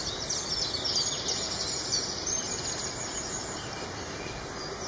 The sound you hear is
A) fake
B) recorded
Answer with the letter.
B